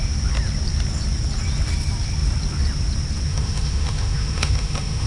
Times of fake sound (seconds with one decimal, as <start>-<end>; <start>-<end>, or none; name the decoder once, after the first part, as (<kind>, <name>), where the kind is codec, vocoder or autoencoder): 3.3-5.1 (autoencoder, DAC-VAE)